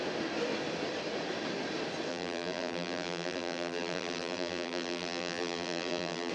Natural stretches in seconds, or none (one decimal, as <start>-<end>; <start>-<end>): 0.0-2.1